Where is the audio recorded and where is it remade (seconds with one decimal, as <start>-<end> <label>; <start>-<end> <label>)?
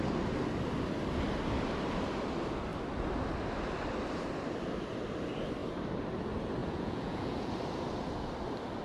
0.0-6.6 recorded; 6.6-7.5 remade; 7.5-8.8 recorded